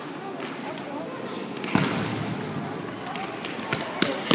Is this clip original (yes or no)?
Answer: yes